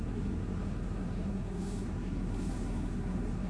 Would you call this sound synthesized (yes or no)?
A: yes